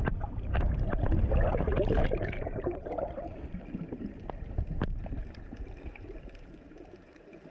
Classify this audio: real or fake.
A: fake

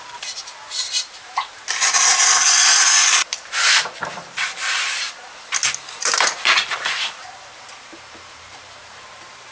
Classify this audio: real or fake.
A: fake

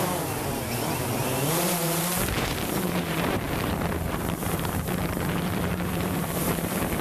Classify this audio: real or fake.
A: fake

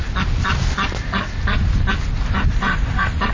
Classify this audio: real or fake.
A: real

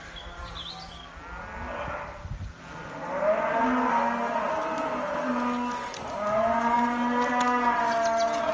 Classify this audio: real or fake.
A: real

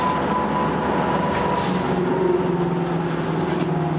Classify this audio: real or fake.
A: real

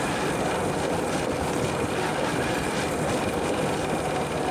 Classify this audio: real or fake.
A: fake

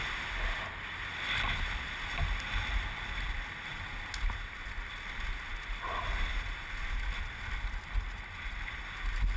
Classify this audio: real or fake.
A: real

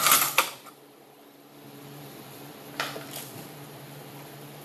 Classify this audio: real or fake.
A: fake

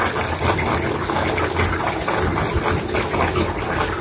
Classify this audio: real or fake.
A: real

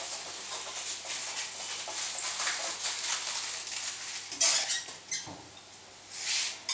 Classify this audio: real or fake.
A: real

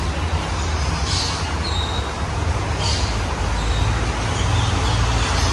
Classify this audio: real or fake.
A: real